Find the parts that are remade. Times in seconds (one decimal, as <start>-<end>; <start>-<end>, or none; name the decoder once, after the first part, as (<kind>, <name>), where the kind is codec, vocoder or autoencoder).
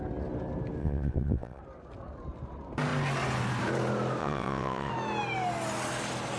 0.8-1.6 (vocoder, WaveNeXt); 4.2-4.9